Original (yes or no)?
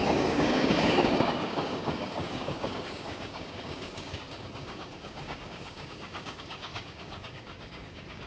no